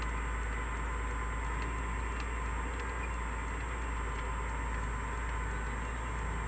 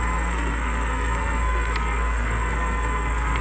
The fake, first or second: second